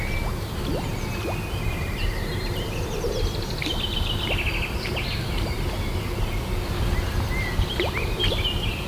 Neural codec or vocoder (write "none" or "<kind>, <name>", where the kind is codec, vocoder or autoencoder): none